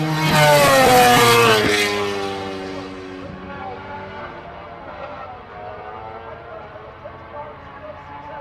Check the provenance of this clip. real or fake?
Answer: real